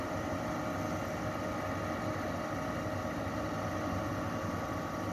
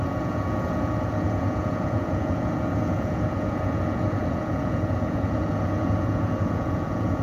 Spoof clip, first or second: second